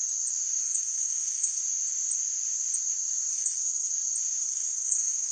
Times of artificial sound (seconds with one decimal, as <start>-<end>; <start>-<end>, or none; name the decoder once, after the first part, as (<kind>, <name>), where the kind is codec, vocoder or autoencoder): 0.6-1.6 (codec, SNAC); 3.3-3.9; 4.4-5.3